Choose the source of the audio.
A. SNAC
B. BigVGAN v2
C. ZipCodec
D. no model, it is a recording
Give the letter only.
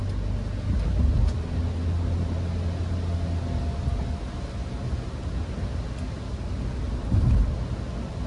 D